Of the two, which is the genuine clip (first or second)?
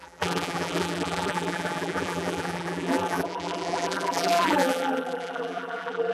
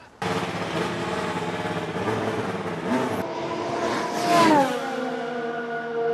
second